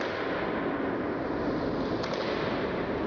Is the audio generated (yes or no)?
no